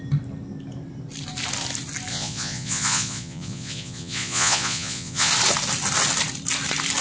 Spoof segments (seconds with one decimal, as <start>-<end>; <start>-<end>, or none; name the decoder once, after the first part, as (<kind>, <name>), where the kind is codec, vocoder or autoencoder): 2.1-5.3 (vocoder, Vocos)